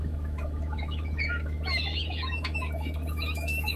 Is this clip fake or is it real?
fake